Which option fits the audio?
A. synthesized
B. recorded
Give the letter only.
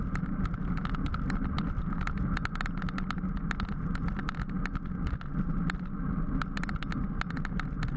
B